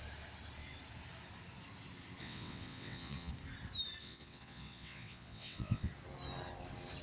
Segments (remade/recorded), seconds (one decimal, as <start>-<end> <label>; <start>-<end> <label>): 0.0-2.2 recorded; 2.2-3.3 remade; 3.3-4.0 recorded; 4.0-5.9 remade; 5.9-7.0 recorded